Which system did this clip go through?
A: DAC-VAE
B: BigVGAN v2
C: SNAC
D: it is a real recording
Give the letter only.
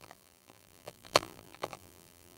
B